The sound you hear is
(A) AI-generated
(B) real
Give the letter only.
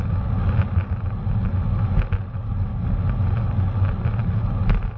B